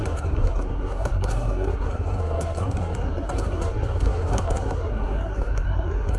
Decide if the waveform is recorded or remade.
remade